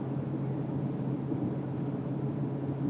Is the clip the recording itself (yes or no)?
yes